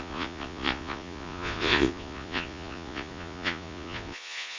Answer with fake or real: fake